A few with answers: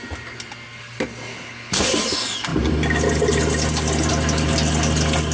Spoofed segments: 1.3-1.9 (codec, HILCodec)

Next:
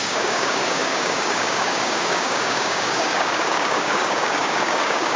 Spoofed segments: 0.0-5.2 (codec, DAC)

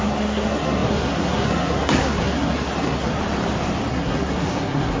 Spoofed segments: 0.0-3.2 (codec, SNAC); 3.9-5.0